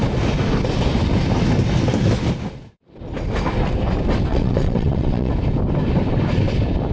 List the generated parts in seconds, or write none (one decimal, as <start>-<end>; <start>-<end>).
4.3-5.3